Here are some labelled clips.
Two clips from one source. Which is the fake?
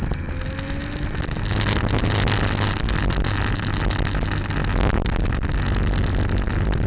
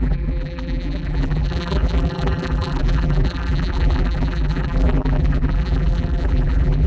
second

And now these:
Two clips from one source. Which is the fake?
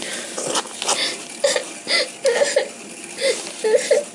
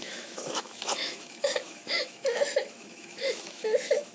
second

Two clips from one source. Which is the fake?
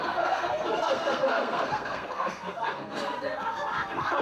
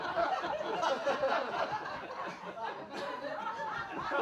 first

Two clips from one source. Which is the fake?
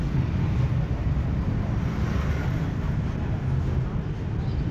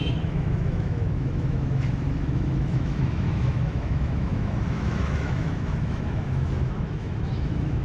second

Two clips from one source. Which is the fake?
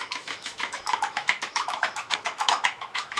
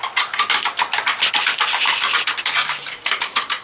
first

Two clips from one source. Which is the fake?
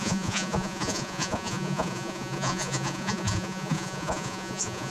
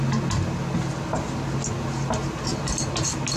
first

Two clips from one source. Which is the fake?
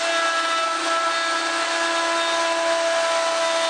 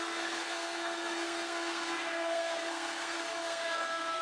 second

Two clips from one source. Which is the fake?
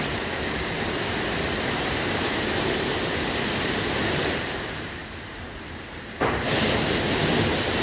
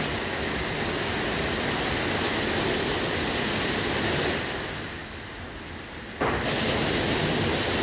first